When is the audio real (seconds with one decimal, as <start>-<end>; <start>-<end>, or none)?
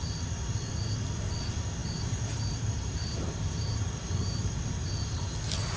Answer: 0.0-1.8; 5.3-5.8